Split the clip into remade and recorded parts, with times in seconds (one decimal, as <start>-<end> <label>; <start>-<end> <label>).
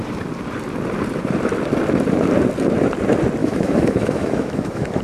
0.0-3.4 recorded; 3.4-5.0 remade